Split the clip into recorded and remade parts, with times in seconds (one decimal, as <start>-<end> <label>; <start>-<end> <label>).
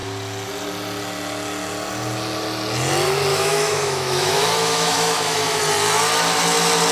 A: 0.0-3.3 recorded; 3.3-5.6 remade; 5.6-6.9 recorded